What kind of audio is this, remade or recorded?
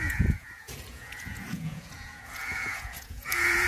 remade